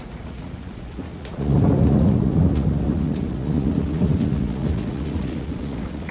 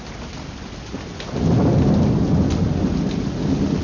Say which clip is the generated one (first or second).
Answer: first